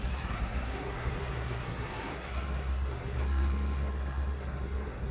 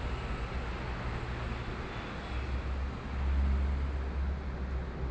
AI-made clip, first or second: first